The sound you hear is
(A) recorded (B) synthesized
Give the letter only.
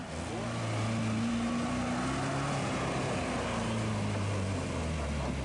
A